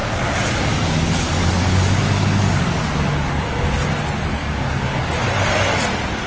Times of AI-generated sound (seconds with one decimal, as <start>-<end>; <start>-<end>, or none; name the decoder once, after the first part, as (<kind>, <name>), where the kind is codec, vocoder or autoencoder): 0.0-3.6 (codec, DAC); 4.4-5.1